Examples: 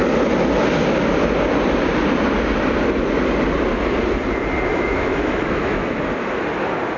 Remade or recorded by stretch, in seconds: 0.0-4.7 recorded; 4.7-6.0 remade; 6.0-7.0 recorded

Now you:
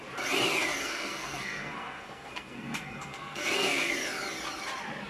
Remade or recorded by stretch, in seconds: 0.0-0.8 recorded; 0.8-3.9 remade; 3.9-5.1 recorded

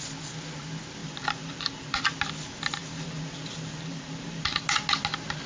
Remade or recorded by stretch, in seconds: 0.0-1.0 recorded; 1.0-2.0 remade; 2.0-2.8 recorded; 2.8-4.6 remade; 4.6-5.5 recorded

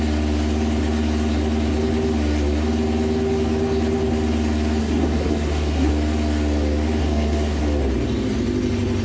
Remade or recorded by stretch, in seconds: 0.0-4.8 recorded; 4.8-5.9 remade; 5.9-7.0 recorded; 7.0-7.6 remade; 7.6-9.0 recorded